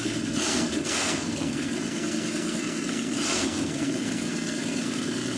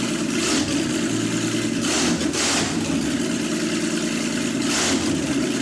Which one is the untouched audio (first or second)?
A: second